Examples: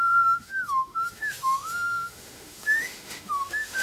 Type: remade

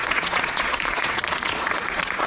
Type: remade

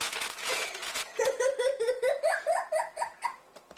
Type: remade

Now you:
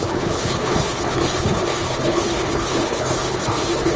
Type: remade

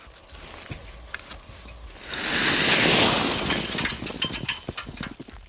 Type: recorded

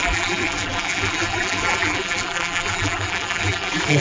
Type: remade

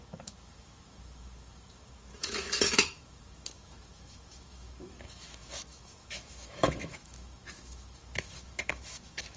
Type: remade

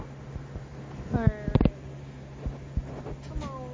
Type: recorded